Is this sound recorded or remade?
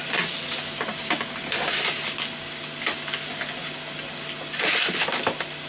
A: recorded